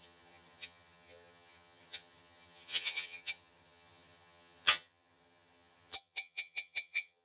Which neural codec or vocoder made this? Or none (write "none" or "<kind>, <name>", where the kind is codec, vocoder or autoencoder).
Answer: vocoder, HiFi-GAN